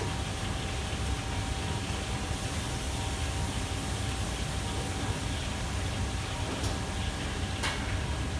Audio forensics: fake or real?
real